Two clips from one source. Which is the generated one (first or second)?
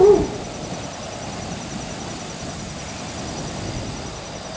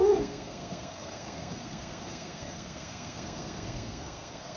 second